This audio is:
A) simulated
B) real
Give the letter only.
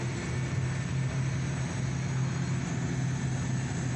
B